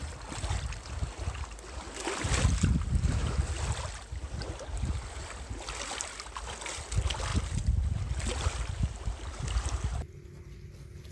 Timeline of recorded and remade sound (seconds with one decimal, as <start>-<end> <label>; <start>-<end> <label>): 0.0-11.1 recorded